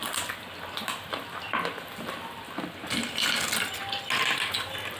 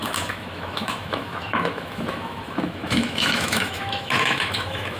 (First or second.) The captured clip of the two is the first